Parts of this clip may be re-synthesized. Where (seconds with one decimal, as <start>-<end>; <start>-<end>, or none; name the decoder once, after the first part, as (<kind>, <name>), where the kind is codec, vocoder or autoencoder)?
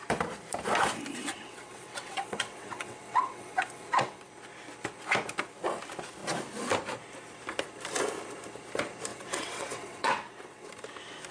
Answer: 1.2-4.3 (vocoder, WaveNeXt); 9.1-10.7